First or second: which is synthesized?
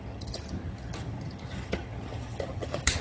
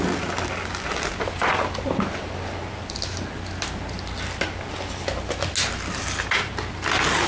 first